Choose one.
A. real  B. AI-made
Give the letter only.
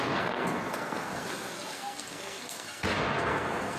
B